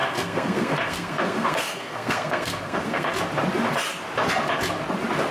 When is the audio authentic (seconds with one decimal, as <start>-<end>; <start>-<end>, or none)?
3.1-5.3